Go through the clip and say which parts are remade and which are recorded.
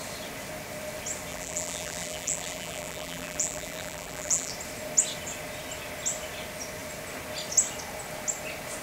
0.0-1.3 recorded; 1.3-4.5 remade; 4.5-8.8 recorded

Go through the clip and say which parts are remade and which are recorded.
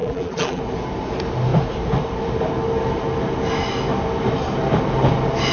0.0-0.6 remade; 0.6-5.5 recorded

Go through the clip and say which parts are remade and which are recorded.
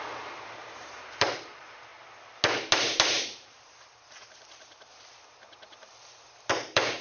0.0-1.9 remade; 1.9-3.1 recorded; 3.1-4.9 remade; 4.9-6.5 recorded; 6.5-7.0 remade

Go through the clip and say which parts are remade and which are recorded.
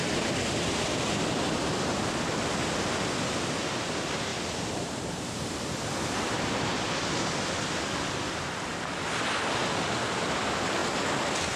0.0-4.3 recorded; 4.3-5.7 remade; 5.7-11.6 recorded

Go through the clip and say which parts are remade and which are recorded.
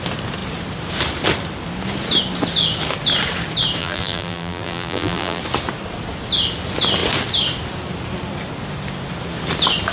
0.0-3.8 recorded; 3.8-5.4 remade; 5.4-9.9 recorded